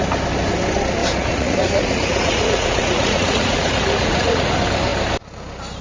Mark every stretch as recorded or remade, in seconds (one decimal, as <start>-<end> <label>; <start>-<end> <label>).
0.0-1.0 recorded; 1.0-4.5 remade; 4.5-5.8 recorded